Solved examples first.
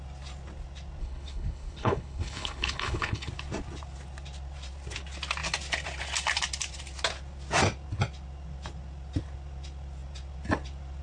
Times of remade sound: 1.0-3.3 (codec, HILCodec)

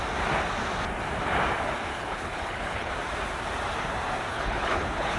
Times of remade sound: 1.9-2.9 (codec, HILCodec); 4.3-5.2